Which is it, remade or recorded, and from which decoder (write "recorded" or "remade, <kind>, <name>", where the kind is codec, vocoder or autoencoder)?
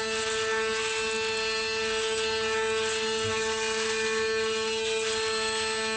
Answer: recorded